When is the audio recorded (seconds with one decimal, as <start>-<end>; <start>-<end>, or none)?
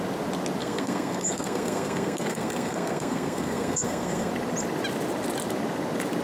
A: 0.0-0.6; 4.3-6.2